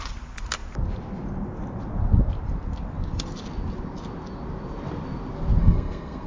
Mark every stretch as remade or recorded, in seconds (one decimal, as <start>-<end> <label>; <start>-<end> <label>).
0.0-5.6 recorded; 5.6-6.3 remade